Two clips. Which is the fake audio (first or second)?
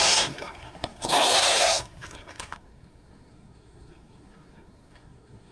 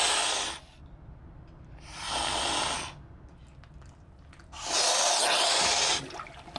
first